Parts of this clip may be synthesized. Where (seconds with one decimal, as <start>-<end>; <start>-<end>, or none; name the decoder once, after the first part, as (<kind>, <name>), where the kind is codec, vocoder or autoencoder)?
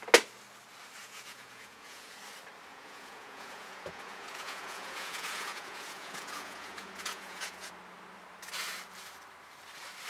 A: 1.0-2.2 (vocoder, Vocos); 2.7-7.7